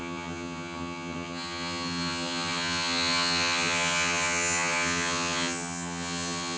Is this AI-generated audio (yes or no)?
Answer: yes